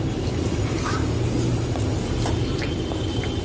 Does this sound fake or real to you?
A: real